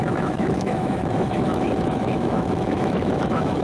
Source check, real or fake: fake